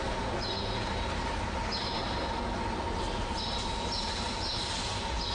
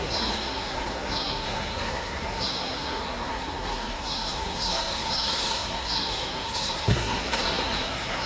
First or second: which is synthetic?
second